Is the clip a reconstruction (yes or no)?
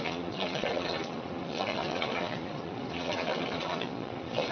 yes